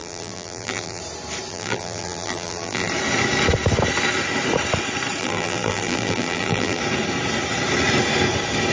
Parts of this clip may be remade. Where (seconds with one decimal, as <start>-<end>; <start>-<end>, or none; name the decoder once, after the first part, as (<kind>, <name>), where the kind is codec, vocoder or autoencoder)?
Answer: 0.0-1.0 (vocoder, BigVGAN v2); 1.5-2.9; 5.2-6.8